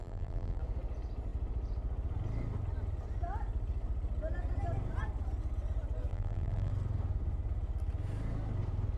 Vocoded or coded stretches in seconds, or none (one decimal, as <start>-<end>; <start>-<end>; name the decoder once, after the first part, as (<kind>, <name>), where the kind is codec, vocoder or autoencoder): 0.0-0.6 (vocoder, BigVGAN v2); 6.1-6.7